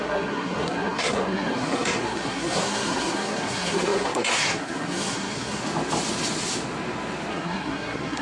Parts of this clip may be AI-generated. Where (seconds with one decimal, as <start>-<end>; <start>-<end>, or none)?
0.0-5.6; 7.3-8.2

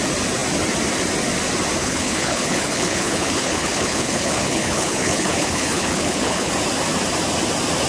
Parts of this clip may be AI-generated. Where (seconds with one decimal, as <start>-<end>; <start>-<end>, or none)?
1.8-6.5

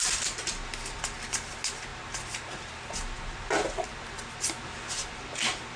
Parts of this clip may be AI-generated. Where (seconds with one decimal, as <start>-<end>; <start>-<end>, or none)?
none

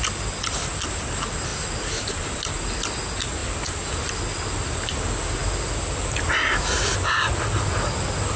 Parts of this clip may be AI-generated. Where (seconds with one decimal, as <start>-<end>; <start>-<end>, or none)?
none